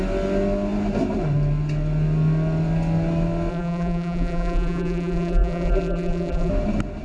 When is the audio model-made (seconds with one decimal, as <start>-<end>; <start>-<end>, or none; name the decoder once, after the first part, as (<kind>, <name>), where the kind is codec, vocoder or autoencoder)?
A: 3.5-6.5 (vocoder, BigVGAN v2)